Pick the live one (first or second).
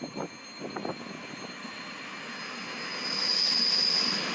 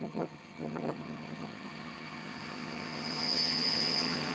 first